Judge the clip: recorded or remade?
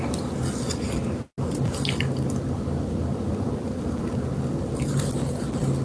recorded